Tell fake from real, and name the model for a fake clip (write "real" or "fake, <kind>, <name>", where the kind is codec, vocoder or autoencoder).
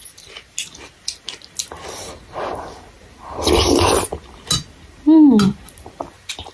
real